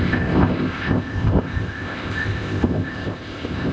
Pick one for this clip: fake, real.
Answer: fake